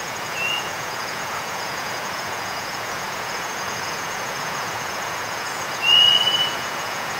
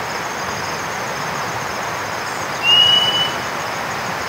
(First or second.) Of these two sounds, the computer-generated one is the first